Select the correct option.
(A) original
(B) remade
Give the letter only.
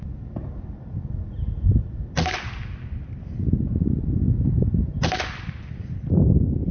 A